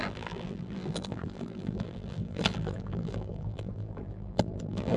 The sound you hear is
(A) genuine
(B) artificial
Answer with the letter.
B